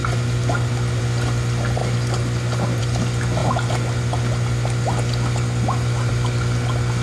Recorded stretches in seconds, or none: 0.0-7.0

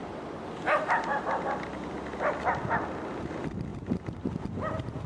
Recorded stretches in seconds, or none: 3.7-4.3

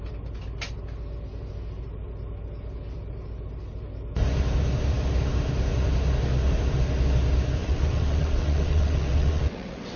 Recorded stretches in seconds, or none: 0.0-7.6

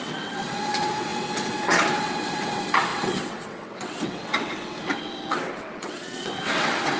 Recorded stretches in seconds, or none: none